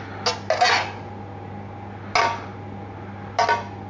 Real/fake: real